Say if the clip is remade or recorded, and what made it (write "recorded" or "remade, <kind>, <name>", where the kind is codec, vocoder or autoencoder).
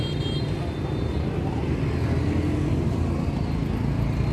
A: recorded